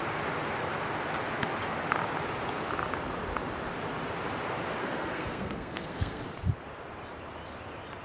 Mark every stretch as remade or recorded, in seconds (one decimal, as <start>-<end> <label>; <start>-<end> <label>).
0.0-4.8 recorded; 4.8-6.2 remade; 6.2-8.0 recorded